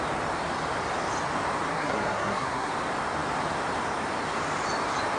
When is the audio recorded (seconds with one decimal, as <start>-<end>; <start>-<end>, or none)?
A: 0.0-1.7; 2.7-5.2

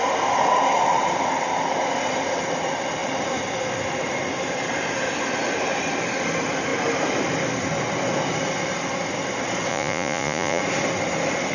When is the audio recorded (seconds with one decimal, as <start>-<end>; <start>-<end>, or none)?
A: 0.0-9.7; 10.6-11.5

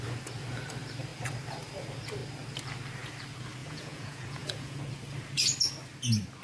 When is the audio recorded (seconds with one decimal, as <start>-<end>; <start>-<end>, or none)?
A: 0.0-3.6; 4.8-6.4

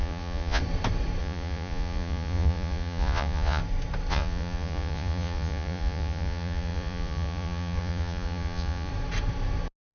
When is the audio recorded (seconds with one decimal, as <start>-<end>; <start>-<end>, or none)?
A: 0.6-1.2; 3.6-4.1; 8.9-9.9